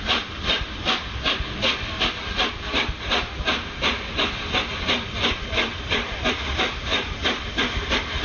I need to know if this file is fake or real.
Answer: real